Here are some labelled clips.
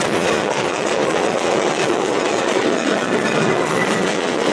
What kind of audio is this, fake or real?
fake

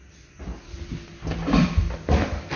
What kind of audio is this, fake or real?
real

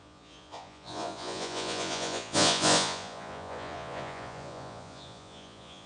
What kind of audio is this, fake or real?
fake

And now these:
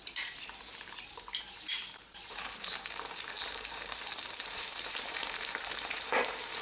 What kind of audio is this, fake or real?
fake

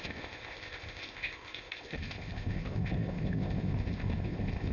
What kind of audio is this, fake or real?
fake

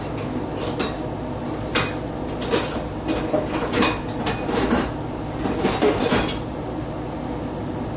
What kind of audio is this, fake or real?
real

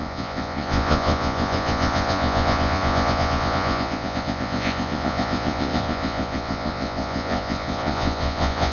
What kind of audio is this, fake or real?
fake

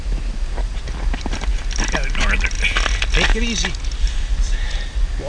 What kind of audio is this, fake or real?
real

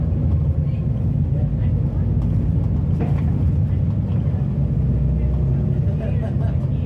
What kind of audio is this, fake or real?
real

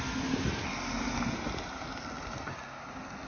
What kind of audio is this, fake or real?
real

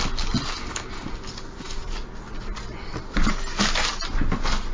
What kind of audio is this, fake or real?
real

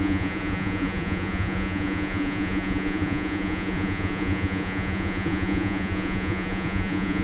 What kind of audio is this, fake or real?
fake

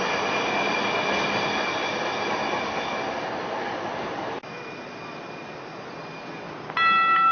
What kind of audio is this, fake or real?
real